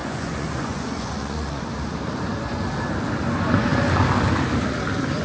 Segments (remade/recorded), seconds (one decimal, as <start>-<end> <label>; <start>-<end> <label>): 0.0-1.6 remade; 1.6-5.2 recorded